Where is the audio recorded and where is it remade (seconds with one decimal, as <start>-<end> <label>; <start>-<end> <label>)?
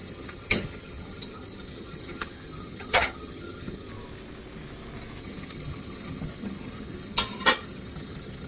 0.0-3.9 remade; 3.9-5.2 recorded; 5.2-8.5 remade